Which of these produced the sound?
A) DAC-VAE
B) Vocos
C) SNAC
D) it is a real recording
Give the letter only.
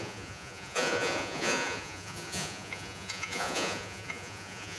B